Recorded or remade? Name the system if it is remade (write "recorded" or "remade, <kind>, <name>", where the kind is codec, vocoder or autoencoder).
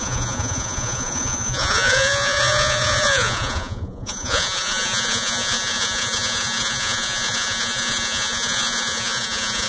remade, vocoder, Vocos